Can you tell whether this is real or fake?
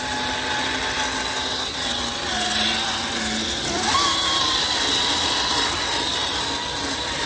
real